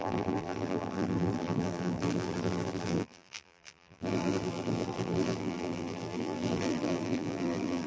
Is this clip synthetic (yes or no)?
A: yes